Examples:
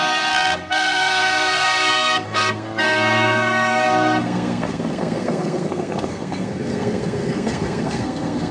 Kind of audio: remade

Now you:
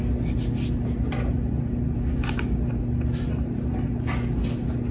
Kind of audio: recorded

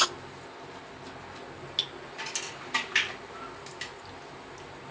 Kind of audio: recorded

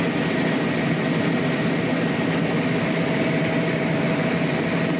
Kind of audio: recorded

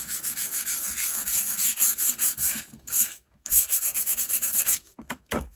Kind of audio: remade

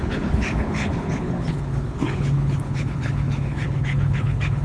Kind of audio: remade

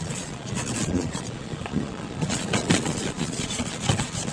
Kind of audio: remade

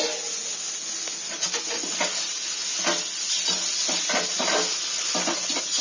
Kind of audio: recorded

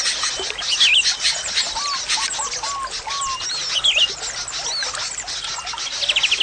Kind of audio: recorded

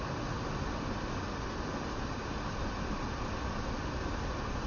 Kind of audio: recorded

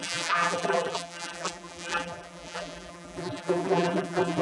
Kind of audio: remade